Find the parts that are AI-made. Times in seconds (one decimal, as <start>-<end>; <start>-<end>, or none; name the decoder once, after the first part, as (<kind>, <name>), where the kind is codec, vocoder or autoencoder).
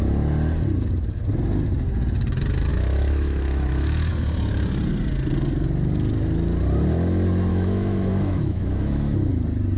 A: 2.7-4.1 (autoencoder, DAC-VAE); 7.5-9.3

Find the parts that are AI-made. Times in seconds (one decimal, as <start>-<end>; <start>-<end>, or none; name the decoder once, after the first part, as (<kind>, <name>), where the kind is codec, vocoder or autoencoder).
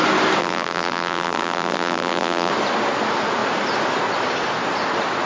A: 0.4-2.5 (vocoder, BigVGAN v2)